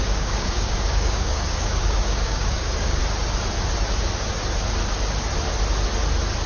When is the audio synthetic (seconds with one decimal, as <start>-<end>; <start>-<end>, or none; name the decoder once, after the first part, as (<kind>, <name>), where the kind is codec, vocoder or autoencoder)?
0.0-3.0 (codec, DAC)